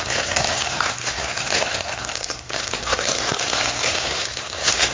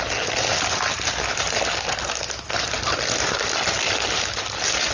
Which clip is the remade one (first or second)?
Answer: first